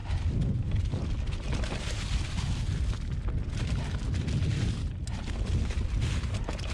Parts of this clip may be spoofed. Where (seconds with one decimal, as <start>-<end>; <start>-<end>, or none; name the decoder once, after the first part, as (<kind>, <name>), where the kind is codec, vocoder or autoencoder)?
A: 0.0-0.9 (vocoder, BigVGAN v2)